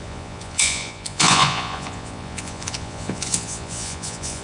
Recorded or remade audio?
remade